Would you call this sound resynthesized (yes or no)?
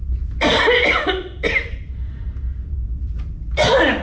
no